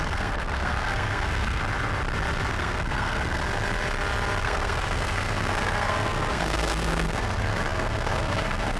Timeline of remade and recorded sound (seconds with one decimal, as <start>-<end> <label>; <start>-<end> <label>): 0.0-1.6 remade; 1.6-2.5 recorded; 2.5-3.4 remade; 3.4-4.4 recorded; 4.4-8.8 remade